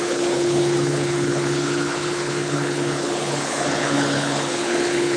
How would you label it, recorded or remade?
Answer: remade